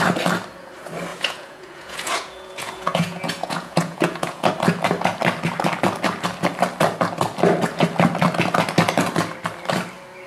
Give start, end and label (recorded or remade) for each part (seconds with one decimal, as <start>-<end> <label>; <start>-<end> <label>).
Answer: 0.0-1.1 recorded; 1.1-4.5 remade; 4.5-10.3 recorded